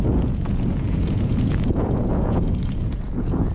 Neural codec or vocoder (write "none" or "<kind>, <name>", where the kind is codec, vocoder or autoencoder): vocoder, Vocos